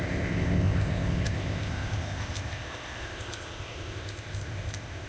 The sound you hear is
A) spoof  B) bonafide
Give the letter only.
A